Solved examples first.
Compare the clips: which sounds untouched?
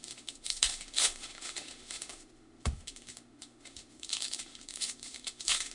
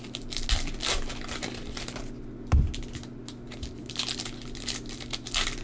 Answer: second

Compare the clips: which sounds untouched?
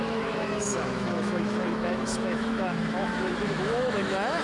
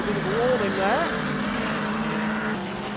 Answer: second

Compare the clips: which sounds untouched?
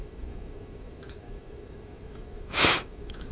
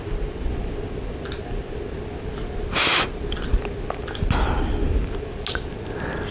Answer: second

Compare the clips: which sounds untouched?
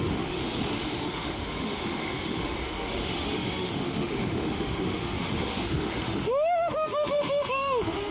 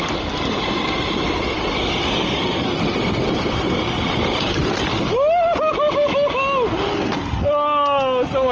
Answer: second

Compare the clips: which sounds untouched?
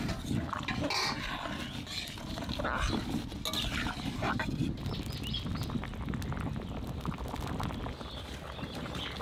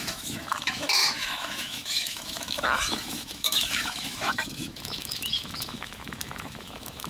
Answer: first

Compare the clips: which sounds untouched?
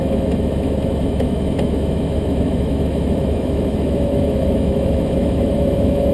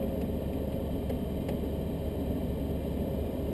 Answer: second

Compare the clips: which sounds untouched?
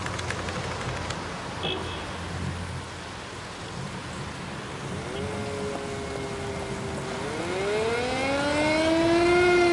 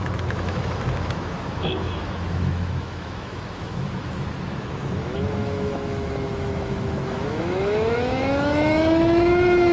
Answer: first